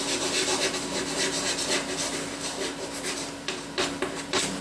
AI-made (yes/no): yes